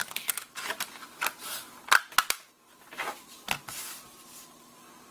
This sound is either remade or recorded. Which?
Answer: recorded